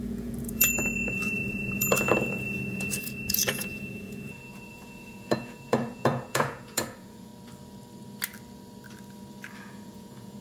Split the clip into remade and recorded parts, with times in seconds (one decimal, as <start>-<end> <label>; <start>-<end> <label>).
0.0-7.3 remade; 7.3-9.6 recorded; 9.6-10.4 remade

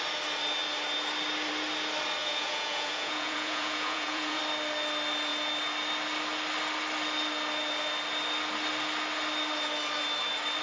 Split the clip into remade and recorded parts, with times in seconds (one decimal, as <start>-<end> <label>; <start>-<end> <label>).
0.0-2.2 recorded; 2.2-4.4 remade; 4.4-10.6 recorded

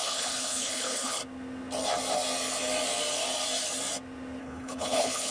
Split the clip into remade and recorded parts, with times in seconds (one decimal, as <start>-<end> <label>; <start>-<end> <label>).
0.0-1.2 remade; 1.2-4.4 recorded; 4.4-5.3 remade